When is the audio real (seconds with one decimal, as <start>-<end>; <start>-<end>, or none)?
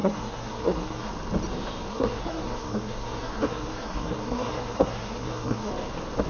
1.1-1.9; 5.7-6.3